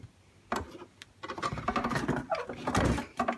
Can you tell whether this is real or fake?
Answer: real